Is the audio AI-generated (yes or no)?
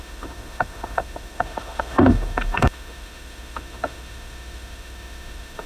yes